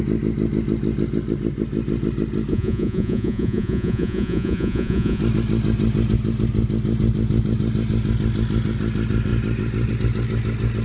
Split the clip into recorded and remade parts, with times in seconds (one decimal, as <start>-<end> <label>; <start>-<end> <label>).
0.0-2.5 recorded; 2.5-5.2 remade; 5.2-10.8 recorded